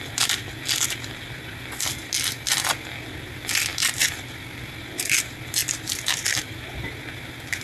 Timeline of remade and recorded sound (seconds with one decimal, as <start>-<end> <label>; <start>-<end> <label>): 0.0-3.7 recorded; 3.7-4.8 remade; 4.8-7.6 recorded